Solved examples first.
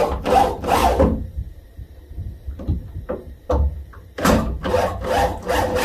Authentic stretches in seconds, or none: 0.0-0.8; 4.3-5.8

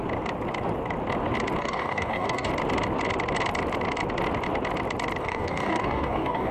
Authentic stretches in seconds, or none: 0.0-1.6; 2.5-5.2